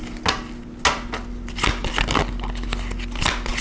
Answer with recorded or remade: recorded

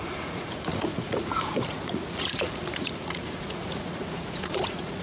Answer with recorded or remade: remade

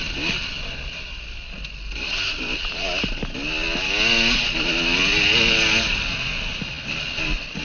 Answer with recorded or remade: recorded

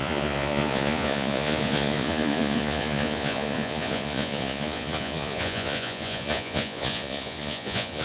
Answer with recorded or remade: remade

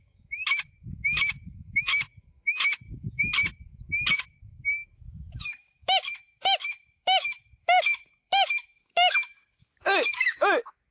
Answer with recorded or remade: remade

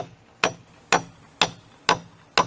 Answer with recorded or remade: recorded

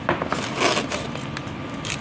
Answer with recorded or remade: recorded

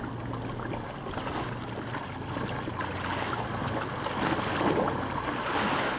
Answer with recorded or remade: recorded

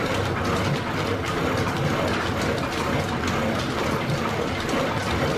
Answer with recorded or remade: recorded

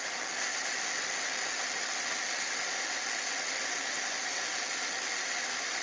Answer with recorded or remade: recorded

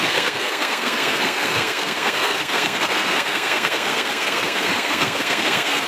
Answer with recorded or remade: remade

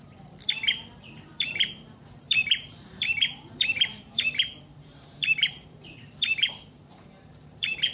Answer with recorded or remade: remade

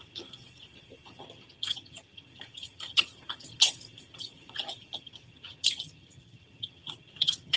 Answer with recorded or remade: remade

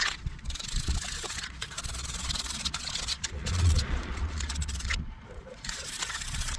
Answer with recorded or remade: remade